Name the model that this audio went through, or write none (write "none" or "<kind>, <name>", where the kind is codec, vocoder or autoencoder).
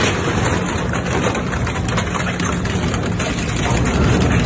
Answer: none